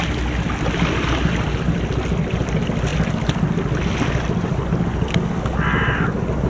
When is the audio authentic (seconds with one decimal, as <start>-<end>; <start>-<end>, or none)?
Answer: 0.0-6.5